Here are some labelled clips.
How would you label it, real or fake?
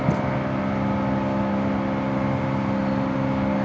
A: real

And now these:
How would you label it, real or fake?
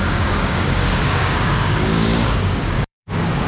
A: fake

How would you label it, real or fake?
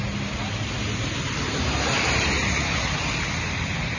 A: real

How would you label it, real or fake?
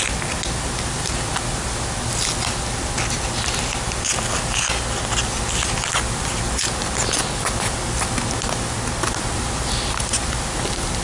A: real